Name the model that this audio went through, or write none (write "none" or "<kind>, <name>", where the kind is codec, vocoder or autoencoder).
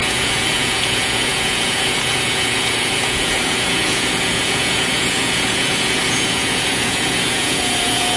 vocoder, Vocos